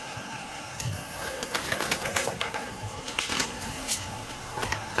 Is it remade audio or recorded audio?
remade